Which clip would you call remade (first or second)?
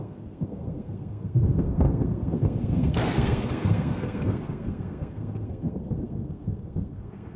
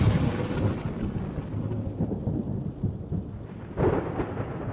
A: first